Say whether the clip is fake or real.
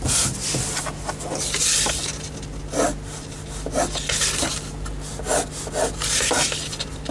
real